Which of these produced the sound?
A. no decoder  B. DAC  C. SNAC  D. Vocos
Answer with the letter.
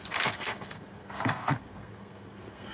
C